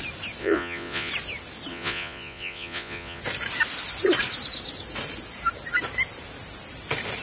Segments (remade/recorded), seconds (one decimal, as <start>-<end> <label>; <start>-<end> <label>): 0.0-0.4 recorded; 0.4-1.1 remade; 1.1-1.7 recorded; 1.7-3.2 remade; 3.2-7.2 recorded